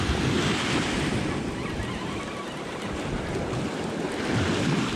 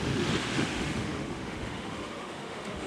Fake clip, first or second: second